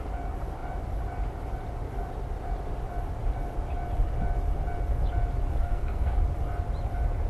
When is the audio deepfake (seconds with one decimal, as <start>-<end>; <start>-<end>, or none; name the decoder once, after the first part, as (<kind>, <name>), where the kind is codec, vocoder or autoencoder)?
5.5-6.2 (codec, SNAC)